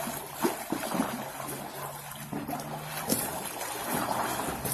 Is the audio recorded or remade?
recorded